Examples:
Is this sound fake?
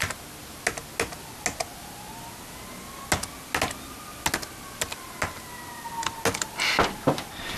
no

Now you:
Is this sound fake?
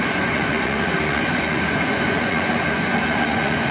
yes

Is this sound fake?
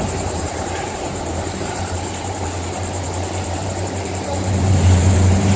yes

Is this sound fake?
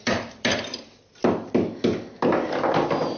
no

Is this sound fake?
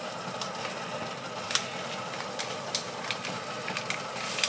no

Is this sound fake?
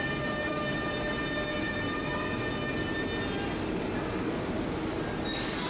no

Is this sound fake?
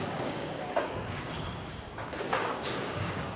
yes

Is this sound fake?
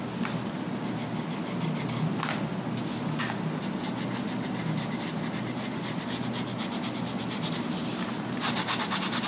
no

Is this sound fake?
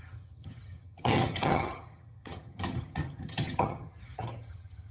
yes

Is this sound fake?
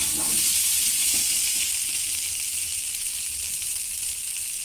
no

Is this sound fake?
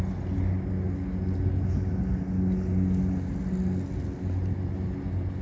no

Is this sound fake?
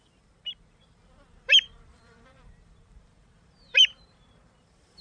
yes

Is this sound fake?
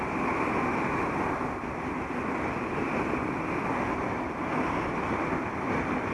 no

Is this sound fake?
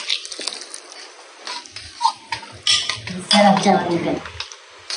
no